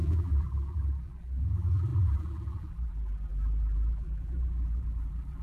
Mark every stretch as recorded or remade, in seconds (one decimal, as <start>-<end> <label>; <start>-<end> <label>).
0.0-5.4 remade